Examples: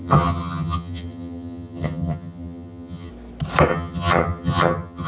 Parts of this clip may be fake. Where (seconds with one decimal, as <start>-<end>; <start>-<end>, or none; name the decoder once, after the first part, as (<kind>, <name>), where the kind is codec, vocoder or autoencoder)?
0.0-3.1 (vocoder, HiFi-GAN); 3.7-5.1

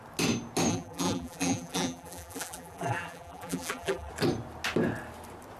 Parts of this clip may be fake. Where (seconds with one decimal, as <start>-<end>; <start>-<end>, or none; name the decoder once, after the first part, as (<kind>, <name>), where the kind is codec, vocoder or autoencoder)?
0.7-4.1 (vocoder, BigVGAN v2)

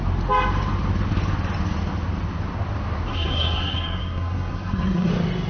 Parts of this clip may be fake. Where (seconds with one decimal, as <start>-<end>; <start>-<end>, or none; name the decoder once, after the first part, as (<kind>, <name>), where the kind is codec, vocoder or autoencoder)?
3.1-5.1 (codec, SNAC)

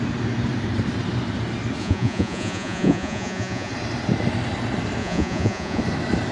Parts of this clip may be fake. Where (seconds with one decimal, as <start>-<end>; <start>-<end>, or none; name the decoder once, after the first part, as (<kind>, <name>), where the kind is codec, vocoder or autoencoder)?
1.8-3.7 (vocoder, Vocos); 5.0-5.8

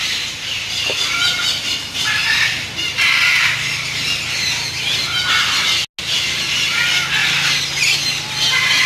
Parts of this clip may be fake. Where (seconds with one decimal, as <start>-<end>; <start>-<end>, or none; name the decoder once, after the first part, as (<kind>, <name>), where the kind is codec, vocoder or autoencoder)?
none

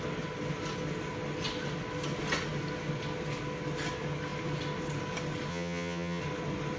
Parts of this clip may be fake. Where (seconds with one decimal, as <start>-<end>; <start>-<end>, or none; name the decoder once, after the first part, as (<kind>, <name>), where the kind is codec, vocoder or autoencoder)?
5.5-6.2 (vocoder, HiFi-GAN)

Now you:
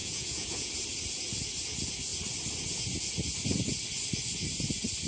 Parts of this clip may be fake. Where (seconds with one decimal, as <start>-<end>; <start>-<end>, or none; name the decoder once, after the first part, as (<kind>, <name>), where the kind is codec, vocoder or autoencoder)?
0.0-0.7 (vocoder, Vocos)

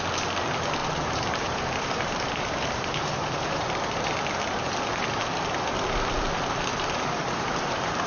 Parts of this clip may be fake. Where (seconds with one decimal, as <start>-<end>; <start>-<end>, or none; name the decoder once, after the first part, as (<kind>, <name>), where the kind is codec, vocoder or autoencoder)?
0.8-3.8 (vocoder, BigVGAN v2); 6.7-8.1